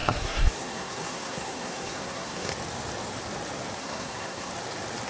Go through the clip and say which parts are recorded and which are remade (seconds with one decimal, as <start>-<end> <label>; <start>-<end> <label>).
0.0-2.5 remade; 2.5-3.8 recorded; 3.8-4.5 remade; 4.5-5.1 recorded